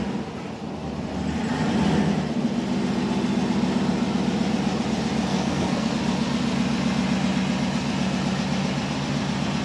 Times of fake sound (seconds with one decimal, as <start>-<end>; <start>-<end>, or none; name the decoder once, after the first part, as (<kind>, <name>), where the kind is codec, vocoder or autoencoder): 5.3-5.9 (codec, SNAC)